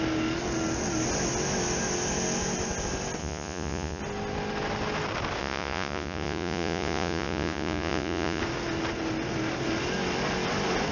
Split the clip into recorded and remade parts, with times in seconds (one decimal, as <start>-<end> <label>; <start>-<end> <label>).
0.0-3.2 recorded; 3.2-4.0 remade; 4.0-5.4 recorded; 5.4-8.4 remade; 8.4-10.9 recorded

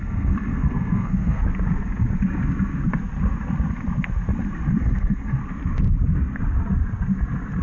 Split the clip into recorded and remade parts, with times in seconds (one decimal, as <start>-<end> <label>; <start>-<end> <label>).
0.0-1.4 remade; 1.4-4.8 recorded; 4.8-5.4 remade; 5.4-7.6 recorded

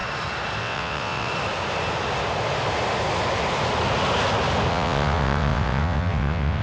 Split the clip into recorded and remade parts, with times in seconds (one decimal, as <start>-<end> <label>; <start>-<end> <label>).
0.0-0.6 recorded; 0.6-1.3 remade; 1.3-4.7 recorded; 4.7-6.6 remade

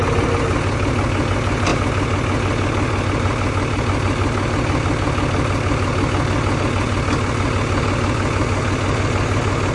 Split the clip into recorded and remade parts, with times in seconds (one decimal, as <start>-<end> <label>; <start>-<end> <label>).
0.0-9.7 recorded

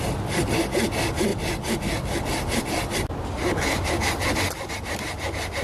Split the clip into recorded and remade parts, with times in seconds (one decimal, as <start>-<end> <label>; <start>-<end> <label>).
0.0-5.6 recorded